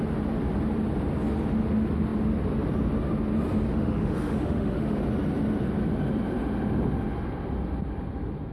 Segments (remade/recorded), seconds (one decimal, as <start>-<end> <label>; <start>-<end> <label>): 0.0-3.7 recorded; 3.7-5.0 remade; 5.0-8.5 recorded